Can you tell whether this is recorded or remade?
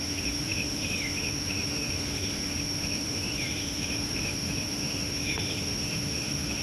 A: remade